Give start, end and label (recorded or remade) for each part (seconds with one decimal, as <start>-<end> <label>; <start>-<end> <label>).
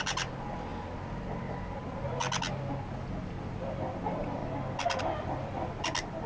0.0-0.7 remade; 0.7-1.8 recorded; 1.8-2.2 remade; 2.2-3.2 recorded; 3.2-4.4 remade; 4.4-5.0 recorded; 5.0-6.3 remade